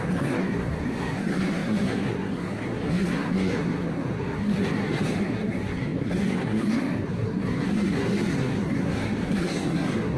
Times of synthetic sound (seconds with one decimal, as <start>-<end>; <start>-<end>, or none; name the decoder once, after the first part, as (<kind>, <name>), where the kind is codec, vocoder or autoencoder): 0.0-10.2 (codec, SNAC)